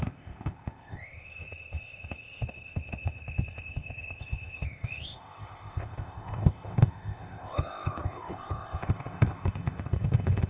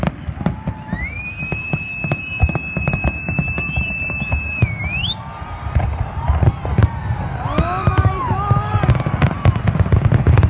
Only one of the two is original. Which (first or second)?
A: second